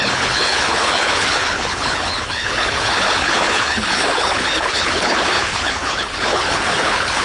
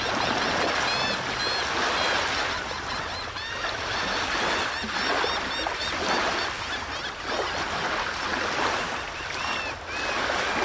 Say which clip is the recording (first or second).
second